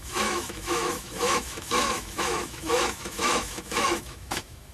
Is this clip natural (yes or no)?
no